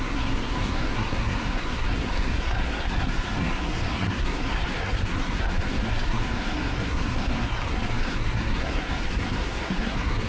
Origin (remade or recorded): remade